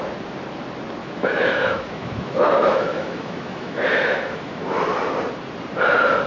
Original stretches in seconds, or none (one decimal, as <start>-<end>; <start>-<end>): 0.0-1.0; 4.8-6.3